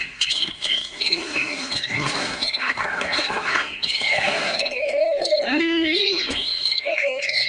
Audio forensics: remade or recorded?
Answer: remade